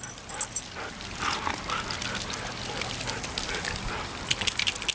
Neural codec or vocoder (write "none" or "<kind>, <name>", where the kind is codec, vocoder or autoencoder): none